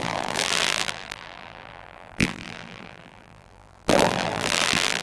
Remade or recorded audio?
remade